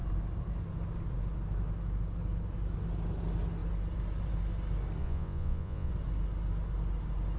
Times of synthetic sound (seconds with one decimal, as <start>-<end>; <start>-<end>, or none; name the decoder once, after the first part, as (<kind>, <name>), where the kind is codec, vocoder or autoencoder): 5.0-5.9 (vocoder, Vocos)